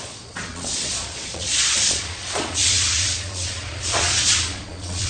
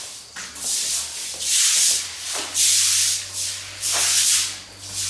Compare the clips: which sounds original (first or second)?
second